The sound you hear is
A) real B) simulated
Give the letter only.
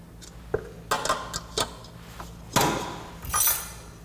A